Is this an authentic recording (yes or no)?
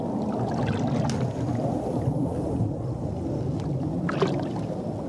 yes